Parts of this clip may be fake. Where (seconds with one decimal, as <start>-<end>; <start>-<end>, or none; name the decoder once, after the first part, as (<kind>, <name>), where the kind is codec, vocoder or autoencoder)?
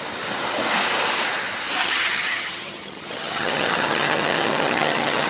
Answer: 1.8-5.3 (vocoder, HiFi-GAN)